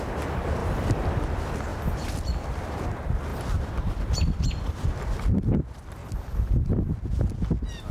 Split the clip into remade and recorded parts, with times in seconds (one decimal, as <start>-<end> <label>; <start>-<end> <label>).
0.0-0.6 recorded; 0.6-1.2 remade; 1.2-1.7 recorded; 1.7-2.8 remade; 2.8-3.3 recorded; 3.3-5.0 remade; 5.0-6.0 recorded; 6.0-7.0 remade; 7.0-7.9 recorded